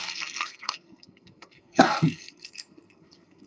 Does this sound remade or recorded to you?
remade